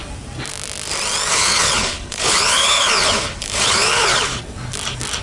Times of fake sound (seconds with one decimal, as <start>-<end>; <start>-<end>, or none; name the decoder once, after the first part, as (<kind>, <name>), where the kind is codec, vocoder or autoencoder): 1.3-4.4 (codec, HILCodec)